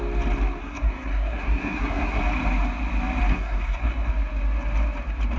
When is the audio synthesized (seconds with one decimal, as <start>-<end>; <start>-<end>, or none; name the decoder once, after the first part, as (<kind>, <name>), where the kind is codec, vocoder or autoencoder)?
0.6-2.2 (codec, SNAC); 3.3-4.1